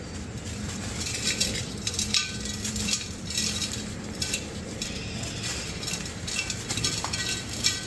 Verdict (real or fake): fake